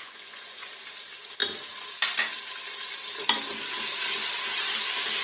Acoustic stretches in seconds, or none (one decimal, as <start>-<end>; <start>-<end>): 0.7-5.2